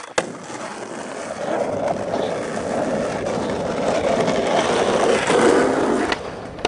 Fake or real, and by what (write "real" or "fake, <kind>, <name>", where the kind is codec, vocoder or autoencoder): real